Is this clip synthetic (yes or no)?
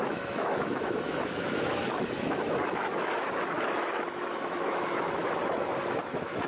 yes